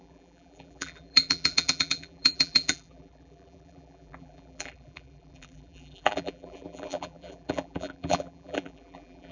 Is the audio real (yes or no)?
no